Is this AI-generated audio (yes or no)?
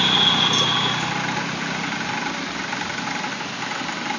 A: no